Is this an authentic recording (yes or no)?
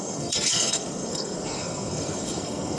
no